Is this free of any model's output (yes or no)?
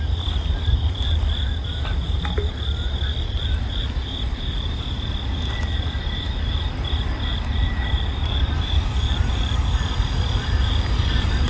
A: no